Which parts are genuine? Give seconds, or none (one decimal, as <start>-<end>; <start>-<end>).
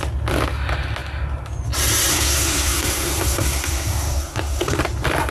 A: 0.0-2.1; 4.8-5.3